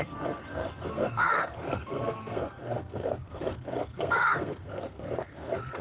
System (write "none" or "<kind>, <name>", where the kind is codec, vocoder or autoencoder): codec, SNAC